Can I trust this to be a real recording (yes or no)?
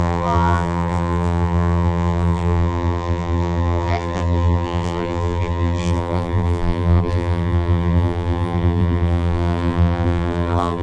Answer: no